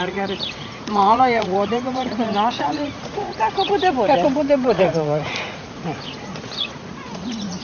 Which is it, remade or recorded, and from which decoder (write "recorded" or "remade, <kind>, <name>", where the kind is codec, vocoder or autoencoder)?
remade, vocoder, Vocos